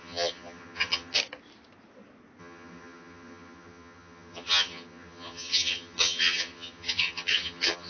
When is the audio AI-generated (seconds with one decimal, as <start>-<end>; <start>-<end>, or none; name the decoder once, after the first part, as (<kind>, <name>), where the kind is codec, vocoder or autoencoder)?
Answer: 0.0-1.2 (vocoder, HiFi-GAN); 2.4-7.9